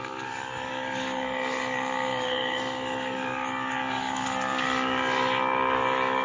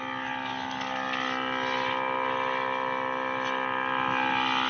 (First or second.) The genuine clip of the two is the second